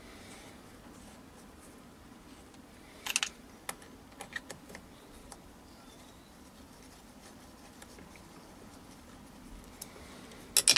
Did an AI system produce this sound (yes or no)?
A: no